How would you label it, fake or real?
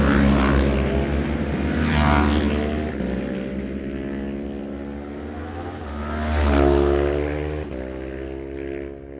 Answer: real